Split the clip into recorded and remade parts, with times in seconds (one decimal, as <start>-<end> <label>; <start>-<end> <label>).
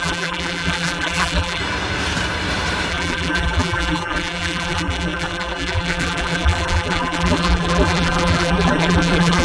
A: 0.0-1.6 remade; 1.6-2.9 recorded; 2.9-9.4 remade